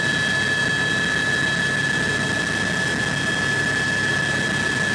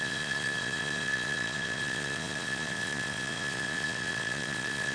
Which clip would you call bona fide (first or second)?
first